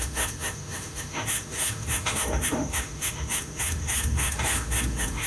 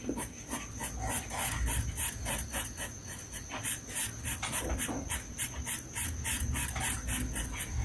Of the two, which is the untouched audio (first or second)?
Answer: second